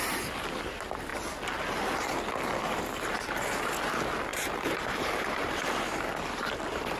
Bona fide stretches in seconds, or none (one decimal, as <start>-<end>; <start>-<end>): 0.0-4.3; 5.8-7.0